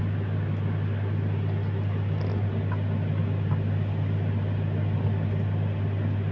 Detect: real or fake real